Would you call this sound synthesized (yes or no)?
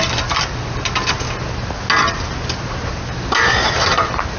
no